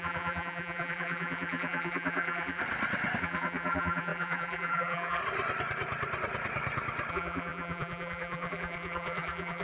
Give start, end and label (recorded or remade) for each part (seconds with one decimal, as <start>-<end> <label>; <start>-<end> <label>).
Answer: 0.0-2.6 remade; 2.6-3.2 recorded; 3.2-5.2 remade; 5.2-7.1 recorded; 7.1-9.6 remade

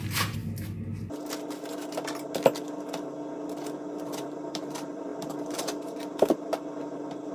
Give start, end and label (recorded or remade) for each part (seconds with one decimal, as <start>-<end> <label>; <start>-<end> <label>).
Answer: 0.0-0.4 remade; 0.4-4.0 recorded; 4.0-7.3 remade